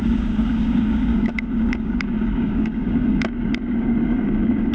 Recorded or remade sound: remade